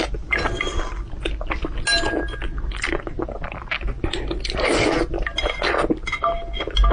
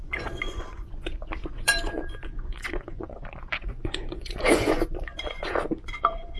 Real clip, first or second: first